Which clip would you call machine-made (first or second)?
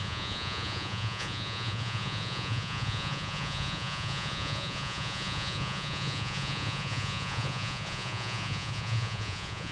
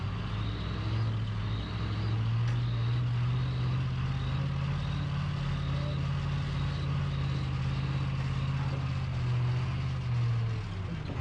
first